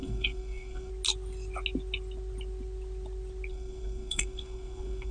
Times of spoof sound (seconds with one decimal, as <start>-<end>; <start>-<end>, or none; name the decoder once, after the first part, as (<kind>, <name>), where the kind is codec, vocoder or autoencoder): 0.0-0.9 (codec, SNAC); 3.5-5.1